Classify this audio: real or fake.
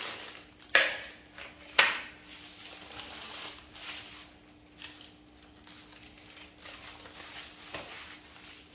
real